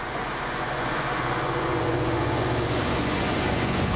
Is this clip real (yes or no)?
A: no